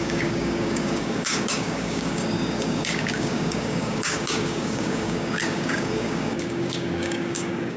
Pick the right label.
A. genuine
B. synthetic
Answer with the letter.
B